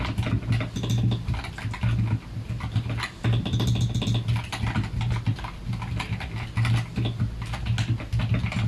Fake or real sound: real